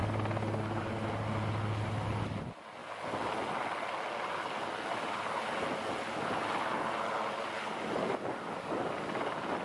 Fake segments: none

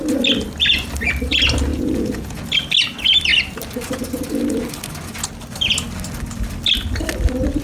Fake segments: 1.7-2.4 (vocoder, Vocos)

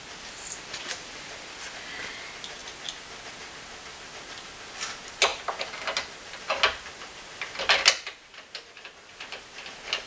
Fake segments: none

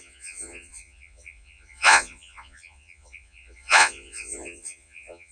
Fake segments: 0.0-5.3 (vocoder, Vocos)

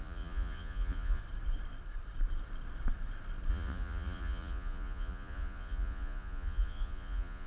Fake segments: 0.0-1.2 (vocoder, Vocos); 3.5-7.5

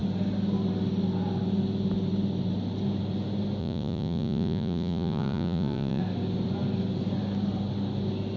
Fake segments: 3.6-6.0 (vocoder, Vocos)

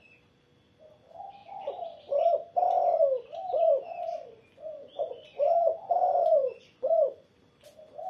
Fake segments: 1.4-2.3 (vocoder, Vocos); 3.5-7.3

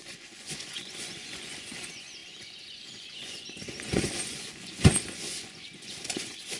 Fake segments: 0.0-6.6 (vocoder, Vocos)